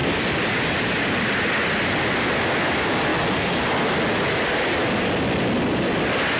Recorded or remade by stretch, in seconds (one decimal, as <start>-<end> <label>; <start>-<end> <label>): 0.0-6.4 recorded